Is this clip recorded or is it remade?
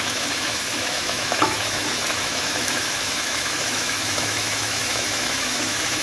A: remade